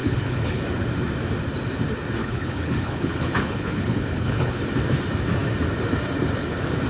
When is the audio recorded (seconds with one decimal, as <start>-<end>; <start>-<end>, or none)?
0.6-2.2; 4.6-6.9